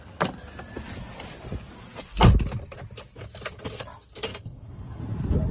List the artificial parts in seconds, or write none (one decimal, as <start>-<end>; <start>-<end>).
4.3-5.0